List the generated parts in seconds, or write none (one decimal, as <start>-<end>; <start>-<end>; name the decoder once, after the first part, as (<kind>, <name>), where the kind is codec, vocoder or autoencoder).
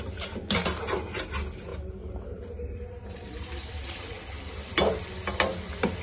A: 1.7-4.7 (vocoder, BigVGAN v2)